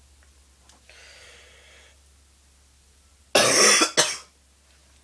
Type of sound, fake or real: real